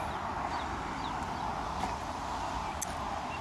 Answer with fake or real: real